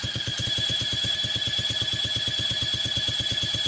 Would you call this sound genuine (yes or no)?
yes